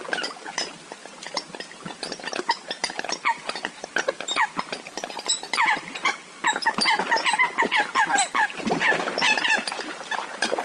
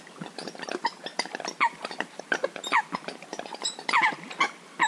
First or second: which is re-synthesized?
first